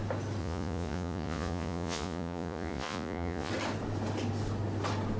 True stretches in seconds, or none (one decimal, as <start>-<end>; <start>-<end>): 0.0-0.4; 3.5-5.2

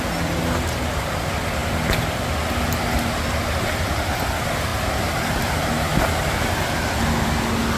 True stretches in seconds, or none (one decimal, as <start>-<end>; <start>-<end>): 0.0-7.8

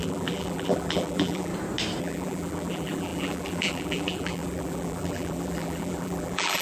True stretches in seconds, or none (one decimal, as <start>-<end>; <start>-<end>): 1.5-2.0

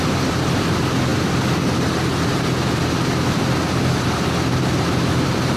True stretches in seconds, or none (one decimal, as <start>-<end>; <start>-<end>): 0.0-5.6

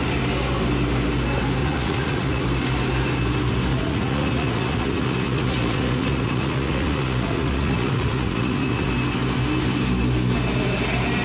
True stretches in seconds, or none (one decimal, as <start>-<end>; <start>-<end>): 0.0-1.6; 2.4-3.7; 8.9-11.2

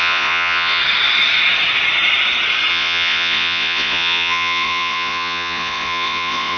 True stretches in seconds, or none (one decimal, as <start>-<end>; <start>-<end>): 0.8-2.7

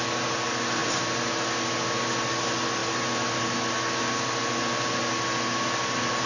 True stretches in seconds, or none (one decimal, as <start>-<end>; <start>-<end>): 0.0-6.3

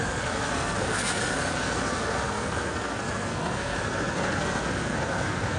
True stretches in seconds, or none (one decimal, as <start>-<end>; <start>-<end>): none